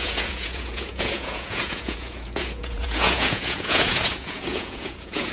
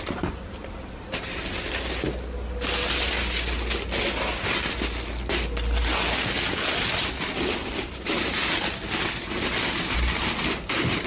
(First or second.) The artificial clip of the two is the first